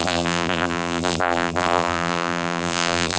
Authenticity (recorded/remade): remade